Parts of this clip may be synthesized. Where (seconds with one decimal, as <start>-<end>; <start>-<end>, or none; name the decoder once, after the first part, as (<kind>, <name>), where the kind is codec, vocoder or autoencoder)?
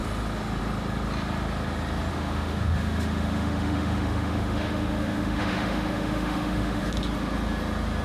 2.1-6.9 (autoencoder, DAC-VAE)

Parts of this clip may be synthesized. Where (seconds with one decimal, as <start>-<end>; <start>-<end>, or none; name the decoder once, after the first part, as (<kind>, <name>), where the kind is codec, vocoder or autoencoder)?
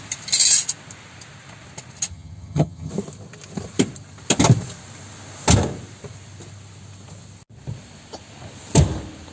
2.1-2.9 (vocoder, HiFi-GAN)